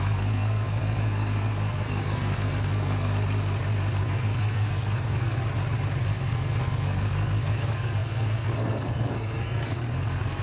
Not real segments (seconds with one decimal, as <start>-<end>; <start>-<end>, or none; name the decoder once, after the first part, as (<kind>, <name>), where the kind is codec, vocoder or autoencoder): 0.0-3.1 (codec, SNAC); 4.0-5.4; 6.0-10.4

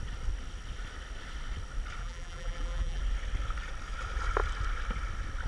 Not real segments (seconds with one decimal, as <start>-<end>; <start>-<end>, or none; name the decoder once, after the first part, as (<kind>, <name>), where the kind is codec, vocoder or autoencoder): 2.0-3.0 (vocoder, BigVGAN v2)

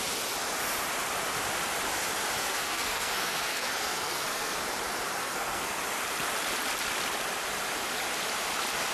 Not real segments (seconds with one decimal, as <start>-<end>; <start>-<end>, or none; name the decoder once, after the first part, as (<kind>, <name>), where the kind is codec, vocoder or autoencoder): 2.4-4.6 (codec, SNAC); 5.2-5.8

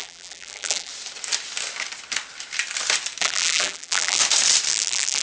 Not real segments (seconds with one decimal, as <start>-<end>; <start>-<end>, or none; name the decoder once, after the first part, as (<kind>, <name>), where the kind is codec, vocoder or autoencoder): 0.0-0.9 (vocoder, BigVGAN v2); 3.2-4.2; 4.7-5.2